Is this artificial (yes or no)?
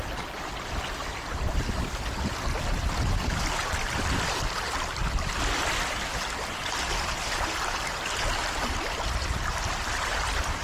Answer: no